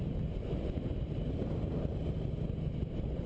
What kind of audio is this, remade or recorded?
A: recorded